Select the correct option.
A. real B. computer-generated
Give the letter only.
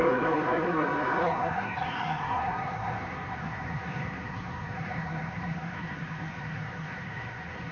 B